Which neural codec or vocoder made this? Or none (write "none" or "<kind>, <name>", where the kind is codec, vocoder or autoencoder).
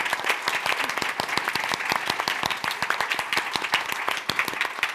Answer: none